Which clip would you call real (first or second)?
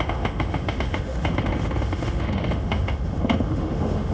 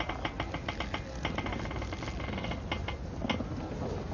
second